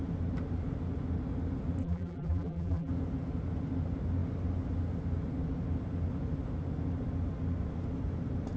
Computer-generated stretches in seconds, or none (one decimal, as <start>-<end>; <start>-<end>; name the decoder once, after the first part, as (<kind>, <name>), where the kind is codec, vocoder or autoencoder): 1.8-2.9 (vocoder, BigVGAN v2)

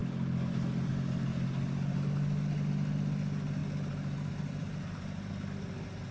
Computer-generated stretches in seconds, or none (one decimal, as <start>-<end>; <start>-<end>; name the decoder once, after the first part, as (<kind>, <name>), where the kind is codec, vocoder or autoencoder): 3.6-5.3 (vocoder, BigVGAN v2)

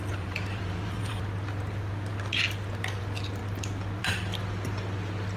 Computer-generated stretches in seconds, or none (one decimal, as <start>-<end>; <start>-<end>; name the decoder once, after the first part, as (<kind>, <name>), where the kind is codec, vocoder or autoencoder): 0.0-1.2 (vocoder, BigVGAN v2)

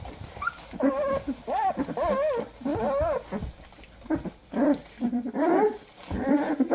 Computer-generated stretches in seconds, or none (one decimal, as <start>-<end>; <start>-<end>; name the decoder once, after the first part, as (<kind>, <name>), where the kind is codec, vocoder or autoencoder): 4.4-6.0 (vocoder, BigVGAN v2)

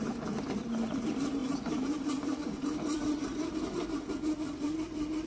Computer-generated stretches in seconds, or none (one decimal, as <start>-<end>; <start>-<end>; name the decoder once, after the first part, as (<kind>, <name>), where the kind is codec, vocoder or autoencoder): 0.0-5.3 (vocoder, BigVGAN v2)